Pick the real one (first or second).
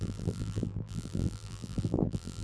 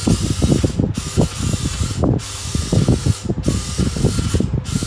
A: second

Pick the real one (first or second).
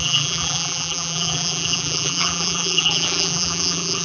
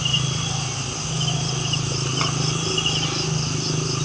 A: second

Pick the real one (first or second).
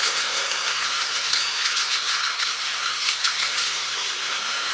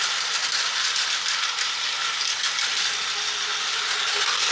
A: second